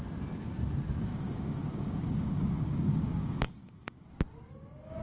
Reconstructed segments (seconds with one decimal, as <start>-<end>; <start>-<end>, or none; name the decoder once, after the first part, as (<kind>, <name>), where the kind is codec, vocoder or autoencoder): 1.1-4.1 (codec, DAC)